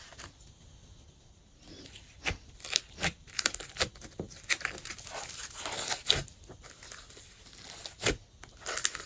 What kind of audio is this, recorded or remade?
recorded